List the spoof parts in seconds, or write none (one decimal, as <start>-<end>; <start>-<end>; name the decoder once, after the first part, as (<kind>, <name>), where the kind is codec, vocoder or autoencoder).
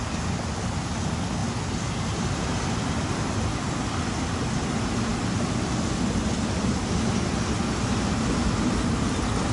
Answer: none